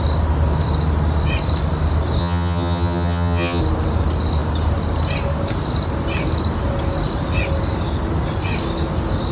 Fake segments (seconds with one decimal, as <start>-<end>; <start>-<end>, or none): 2.2-3.6